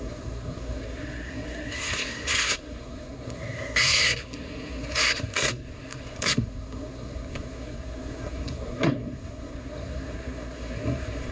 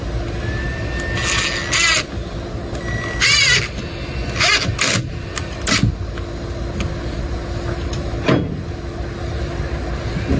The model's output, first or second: first